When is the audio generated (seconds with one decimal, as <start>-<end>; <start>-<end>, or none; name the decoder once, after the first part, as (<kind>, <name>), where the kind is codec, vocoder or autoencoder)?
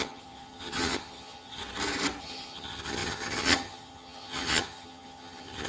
0.0-1.6 (vocoder, HiFi-GAN); 2.2-5.7